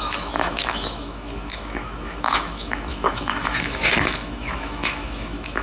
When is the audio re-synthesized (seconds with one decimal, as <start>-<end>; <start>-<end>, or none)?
0.0-5.6